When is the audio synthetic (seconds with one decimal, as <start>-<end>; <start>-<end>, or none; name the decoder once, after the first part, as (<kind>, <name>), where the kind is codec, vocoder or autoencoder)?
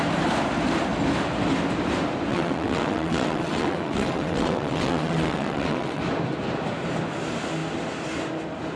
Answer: 2.3-6.0 (vocoder, WaveNeXt)